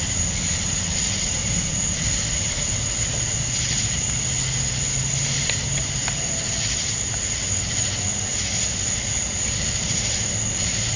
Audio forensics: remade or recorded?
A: recorded